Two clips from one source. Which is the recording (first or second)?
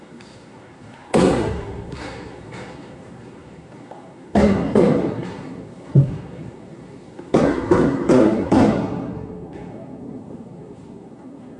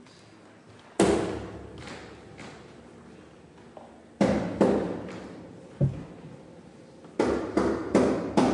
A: second